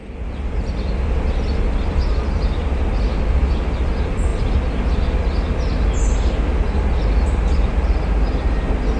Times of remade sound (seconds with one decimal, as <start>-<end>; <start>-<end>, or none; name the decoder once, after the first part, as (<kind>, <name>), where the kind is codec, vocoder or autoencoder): none